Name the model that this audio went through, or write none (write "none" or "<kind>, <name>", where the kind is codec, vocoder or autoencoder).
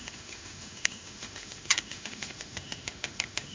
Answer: autoencoder, DAC-VAE